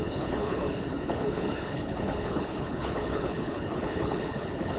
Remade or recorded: remade